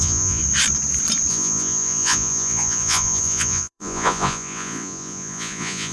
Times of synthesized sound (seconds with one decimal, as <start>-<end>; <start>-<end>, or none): 0.0-0.4; 1.3-5.9